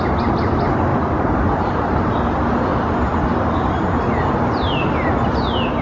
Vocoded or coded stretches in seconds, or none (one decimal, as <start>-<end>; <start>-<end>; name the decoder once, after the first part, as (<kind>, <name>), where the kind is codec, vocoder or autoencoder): 0.9-2.0 (vocoder, BigVGAN v2); 2.7-5.1